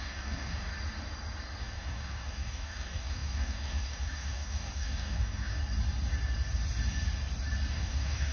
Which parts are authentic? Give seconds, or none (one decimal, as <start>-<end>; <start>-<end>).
0.7-1.6; 5.6-7.7